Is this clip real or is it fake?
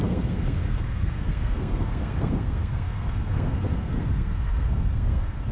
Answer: fake